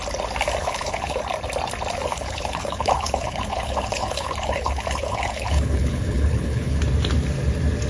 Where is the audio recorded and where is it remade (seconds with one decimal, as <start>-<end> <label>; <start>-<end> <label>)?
0.0-0.6 recorded; 0.6-1.2 remade; 1.2-2.1 recorded; 2.1-6.8 remade; 6.8-7.9 recorded